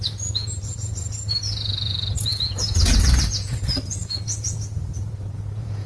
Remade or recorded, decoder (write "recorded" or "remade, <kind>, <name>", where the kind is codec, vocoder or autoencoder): remade, vocoder, Vocos